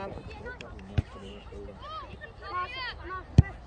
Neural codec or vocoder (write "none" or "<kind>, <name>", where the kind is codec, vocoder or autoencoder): none